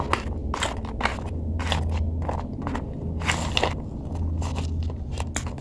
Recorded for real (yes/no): yes